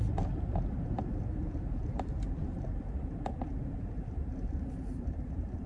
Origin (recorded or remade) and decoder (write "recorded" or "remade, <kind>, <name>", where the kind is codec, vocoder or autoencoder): remade, vocoder, BigVGAN v2